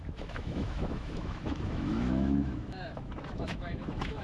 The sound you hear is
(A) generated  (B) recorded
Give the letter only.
A